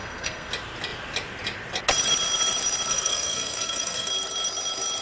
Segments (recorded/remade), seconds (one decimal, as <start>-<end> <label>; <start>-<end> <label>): 0.0-0.5 remade; 0.5-2.9 recorded; 2.9-4.1 remade; 4.1-5.0 recorded